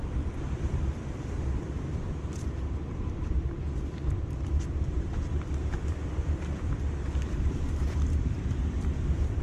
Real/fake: fake